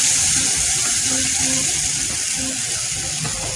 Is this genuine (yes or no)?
yes